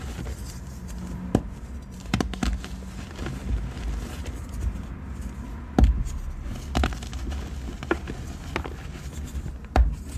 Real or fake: real